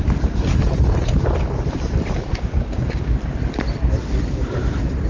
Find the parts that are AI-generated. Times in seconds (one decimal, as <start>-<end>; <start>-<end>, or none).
2.3-3.2